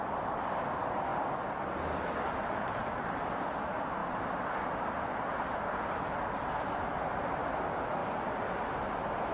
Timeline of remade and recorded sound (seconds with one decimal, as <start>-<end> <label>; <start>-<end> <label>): 0.0-9.3 recorded